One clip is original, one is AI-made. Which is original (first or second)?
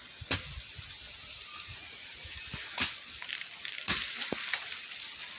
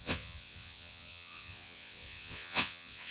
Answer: first